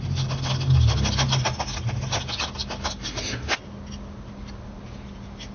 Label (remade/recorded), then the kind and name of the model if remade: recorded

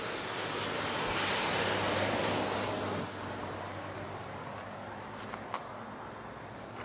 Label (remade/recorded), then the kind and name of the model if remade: recorded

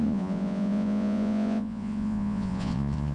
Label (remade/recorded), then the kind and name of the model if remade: remade, vocoder, Vocos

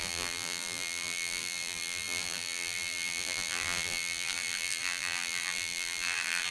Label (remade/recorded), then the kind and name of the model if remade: remade, vocoder, BigVGAN v2